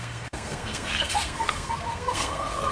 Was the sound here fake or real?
fake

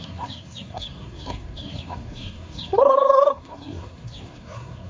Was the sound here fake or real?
fake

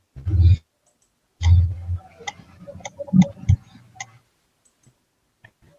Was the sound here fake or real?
real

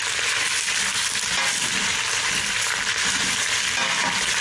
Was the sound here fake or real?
real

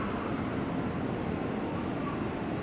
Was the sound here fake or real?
real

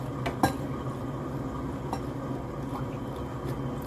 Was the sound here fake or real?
real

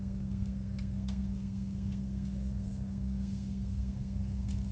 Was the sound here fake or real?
fake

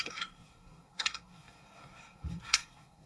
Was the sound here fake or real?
fake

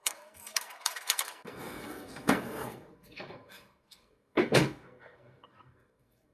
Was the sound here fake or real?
fake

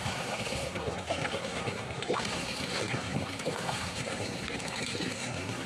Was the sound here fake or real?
fake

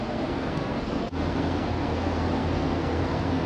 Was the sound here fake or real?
fake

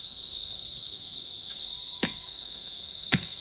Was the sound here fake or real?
fake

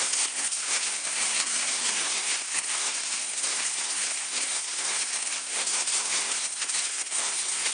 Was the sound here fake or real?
fake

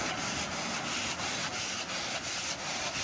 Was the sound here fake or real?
real